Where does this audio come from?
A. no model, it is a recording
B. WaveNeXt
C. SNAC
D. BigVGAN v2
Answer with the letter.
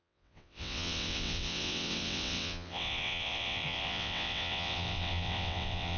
B